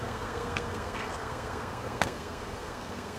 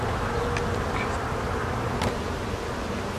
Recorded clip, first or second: second